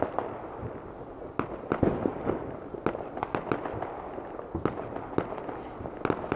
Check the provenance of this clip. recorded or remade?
recorded